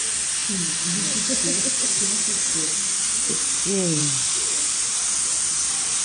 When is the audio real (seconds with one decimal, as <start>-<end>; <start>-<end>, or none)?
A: 0.0-6.0